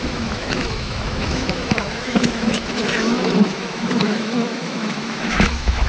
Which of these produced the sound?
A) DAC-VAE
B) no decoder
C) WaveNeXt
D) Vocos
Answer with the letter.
A